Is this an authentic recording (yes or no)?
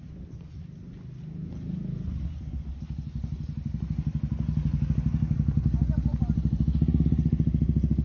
yes